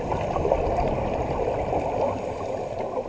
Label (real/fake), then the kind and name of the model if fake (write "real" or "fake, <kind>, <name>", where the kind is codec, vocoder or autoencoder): fake, vocoder, BigVGAN v2